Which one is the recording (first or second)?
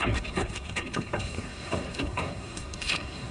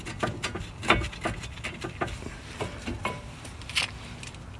second